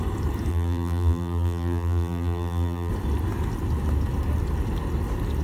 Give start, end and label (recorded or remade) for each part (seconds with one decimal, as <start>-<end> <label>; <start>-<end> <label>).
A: 0.0-0.5 recorded; 0.5-2.9 remade; 2.9-5.4 recorded